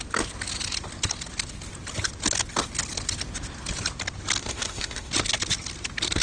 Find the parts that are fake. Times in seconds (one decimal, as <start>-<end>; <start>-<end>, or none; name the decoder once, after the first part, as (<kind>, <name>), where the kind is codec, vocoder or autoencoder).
4.4-5.1 (autoencoder, DAC-VAE)